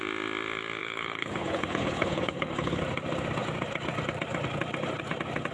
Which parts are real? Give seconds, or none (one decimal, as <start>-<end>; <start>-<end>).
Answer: 0.0-0.8; 2.8-5.5